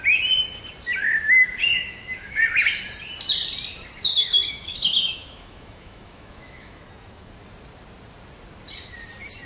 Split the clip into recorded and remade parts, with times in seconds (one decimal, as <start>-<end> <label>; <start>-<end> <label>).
0.0-1.0 recorded; 1.0-2.4 remade; 2.4-4.1 recorded; 4.1-7.3 remade; 7.3-9.5 recorded